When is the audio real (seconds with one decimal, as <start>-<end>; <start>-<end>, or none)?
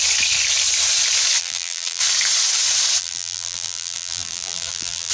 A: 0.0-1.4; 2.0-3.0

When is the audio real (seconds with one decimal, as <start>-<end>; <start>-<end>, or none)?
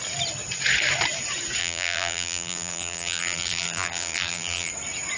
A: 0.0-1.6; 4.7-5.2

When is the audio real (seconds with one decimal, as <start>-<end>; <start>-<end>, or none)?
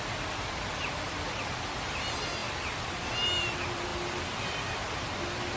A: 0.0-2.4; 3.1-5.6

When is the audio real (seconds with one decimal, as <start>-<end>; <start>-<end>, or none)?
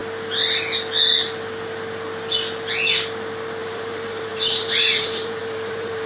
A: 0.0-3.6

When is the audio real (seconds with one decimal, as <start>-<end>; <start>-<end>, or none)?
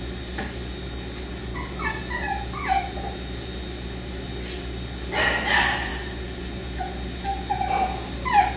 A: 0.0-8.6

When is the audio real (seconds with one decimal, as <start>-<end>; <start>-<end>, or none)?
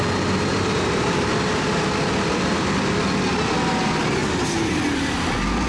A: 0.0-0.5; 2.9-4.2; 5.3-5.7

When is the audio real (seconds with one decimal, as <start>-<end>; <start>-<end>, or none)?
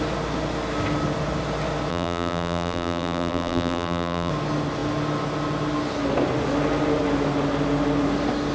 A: 0.0-1.9; 4.3-8.5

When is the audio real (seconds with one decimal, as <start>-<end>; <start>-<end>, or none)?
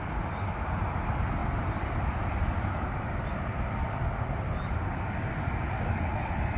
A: 0.0-1.4; 5.1-6.6